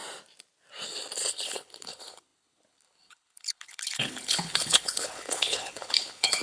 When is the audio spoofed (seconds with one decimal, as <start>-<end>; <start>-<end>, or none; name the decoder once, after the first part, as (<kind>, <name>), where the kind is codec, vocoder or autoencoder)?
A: 1.3-6.4 (codec, HILCodec)